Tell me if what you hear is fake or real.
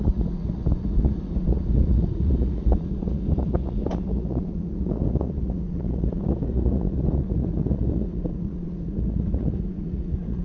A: fake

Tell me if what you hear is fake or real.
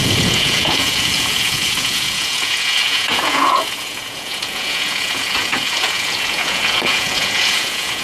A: fake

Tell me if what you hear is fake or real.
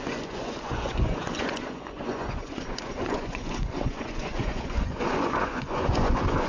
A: fake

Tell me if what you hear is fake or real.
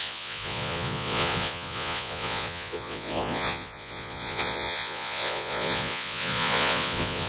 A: fake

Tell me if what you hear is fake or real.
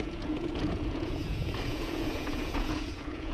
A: fake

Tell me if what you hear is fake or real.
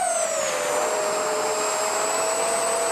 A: real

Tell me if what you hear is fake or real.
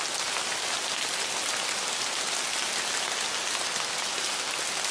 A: real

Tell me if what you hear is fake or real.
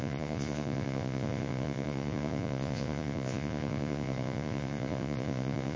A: fake